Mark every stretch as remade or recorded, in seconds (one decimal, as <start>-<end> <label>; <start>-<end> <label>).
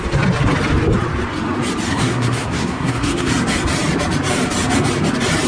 0.0-1.9 recorded; 1.9-3.3 remade; 3.3-5.5 recorded